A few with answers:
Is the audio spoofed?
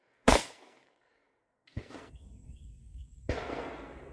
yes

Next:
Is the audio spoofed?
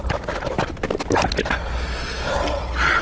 no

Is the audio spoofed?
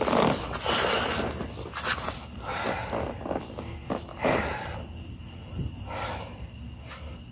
no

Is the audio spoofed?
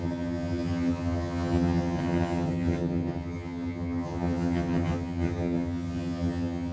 yes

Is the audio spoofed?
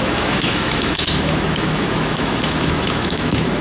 yes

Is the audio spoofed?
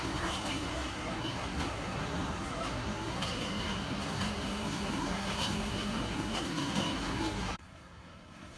yes